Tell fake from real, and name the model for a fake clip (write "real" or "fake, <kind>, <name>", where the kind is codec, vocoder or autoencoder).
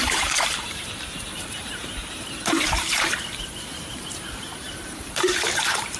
fake, vocoder, BigVGAN v2